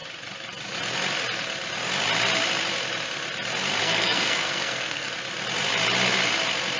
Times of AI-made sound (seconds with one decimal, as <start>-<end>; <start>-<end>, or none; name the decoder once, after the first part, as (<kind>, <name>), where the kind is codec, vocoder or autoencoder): 3.8-5.1 (codec, SNAC)